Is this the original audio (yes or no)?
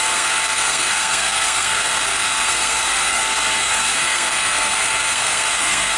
no